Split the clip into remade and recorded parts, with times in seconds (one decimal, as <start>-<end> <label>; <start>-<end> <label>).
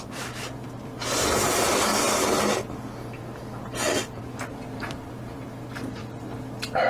0.0-1.9 remade; 1.9-4.2 recorded; 4.2-6.0 remade; 6.0-6.9 recorded